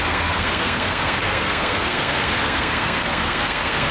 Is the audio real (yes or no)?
no